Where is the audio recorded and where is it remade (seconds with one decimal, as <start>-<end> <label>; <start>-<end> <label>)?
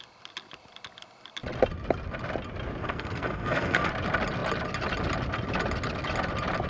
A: 0.0-2.8 recorded; 2.8-3.9 remade; 3.9-6.7 recorded